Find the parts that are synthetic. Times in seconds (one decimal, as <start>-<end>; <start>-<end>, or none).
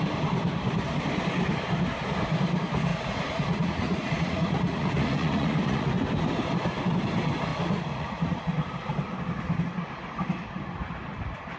2.9-5.9; 7.5-8.4